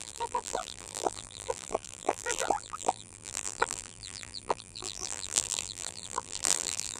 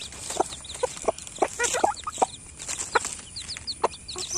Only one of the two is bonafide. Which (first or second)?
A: second